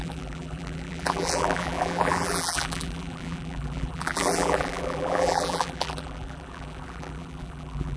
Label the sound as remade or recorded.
remade